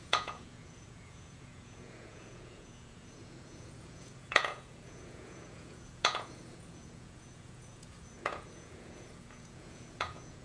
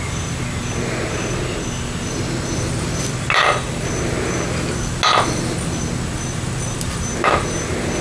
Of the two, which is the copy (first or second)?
first